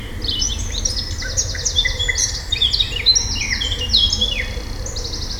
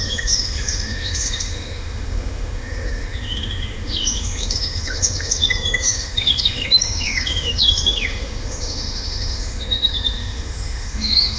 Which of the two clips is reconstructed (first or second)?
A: second